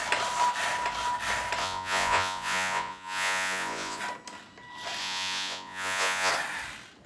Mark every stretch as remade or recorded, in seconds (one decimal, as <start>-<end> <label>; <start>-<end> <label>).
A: 0.0-1.6 recorded; 1.6-4.0 remade; 4.0-5.0 recorded; 5.0-6.3 remade; 6.3-7.1 recorded